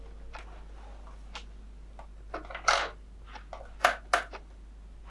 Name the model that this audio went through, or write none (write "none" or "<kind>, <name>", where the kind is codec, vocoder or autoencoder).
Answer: none